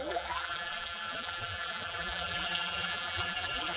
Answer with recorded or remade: remade